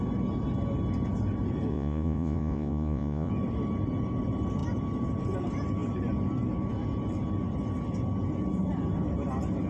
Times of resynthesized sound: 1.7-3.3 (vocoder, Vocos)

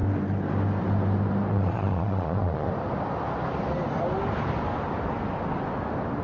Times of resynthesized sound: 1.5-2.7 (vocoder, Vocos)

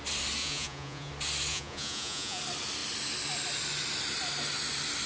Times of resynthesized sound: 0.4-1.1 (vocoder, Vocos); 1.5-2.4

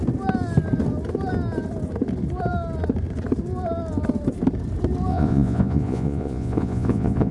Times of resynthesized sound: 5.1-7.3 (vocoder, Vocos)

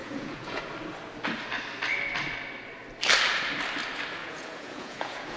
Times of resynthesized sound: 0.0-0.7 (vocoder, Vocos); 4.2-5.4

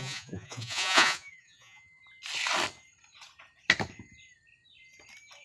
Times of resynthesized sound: 0.0-2.0 (vocoder, Vocos)